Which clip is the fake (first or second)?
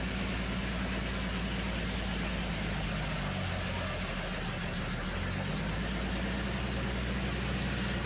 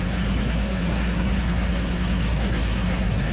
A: second